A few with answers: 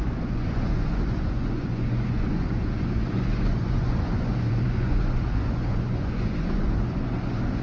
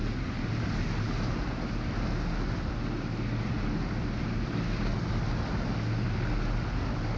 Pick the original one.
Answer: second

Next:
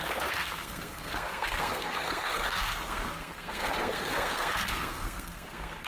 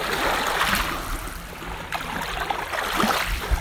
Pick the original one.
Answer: second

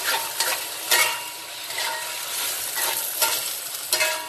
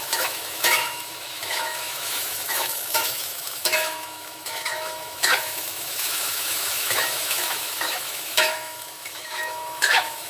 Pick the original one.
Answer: first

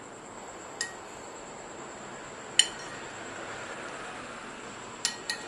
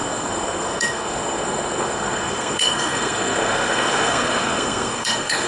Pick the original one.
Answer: first